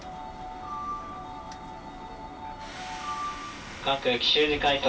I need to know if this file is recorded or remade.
recorded